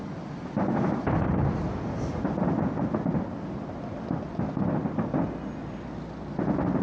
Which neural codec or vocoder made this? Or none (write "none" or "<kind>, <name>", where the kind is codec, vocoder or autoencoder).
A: none